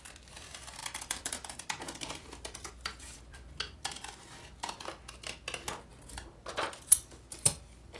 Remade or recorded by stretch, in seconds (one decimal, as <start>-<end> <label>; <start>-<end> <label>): 0.0-0.8 recorded; 0.8-4.1 remade; 4.1-8.0 recorded